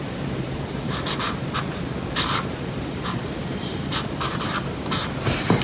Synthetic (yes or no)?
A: yes